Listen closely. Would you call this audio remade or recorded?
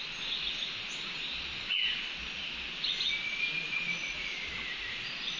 recorded